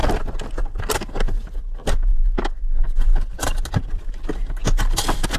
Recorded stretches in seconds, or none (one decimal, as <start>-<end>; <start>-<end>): 0.0-5.4